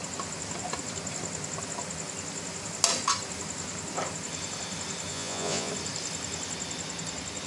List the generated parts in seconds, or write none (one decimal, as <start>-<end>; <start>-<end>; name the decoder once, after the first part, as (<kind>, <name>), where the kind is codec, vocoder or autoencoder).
5.1-5.7 (vocoder, Vocos)